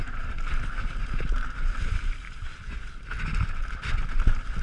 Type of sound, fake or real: real